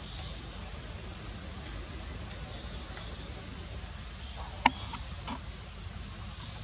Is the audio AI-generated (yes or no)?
no